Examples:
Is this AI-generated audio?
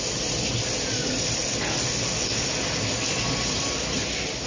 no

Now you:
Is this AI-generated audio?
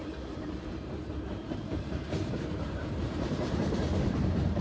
yes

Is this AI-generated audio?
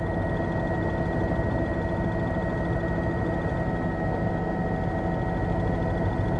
no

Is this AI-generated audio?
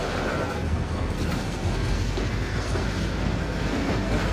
yes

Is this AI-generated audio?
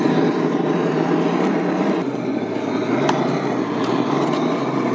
no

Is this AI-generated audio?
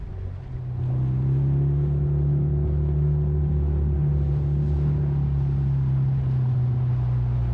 no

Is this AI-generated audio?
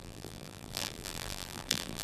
yes